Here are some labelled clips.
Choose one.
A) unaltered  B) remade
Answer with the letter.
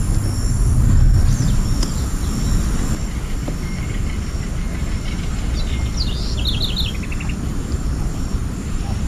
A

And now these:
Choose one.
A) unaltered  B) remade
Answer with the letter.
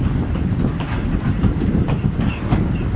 A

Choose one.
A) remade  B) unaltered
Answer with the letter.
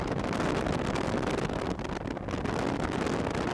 B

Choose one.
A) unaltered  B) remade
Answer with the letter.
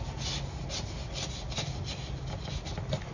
A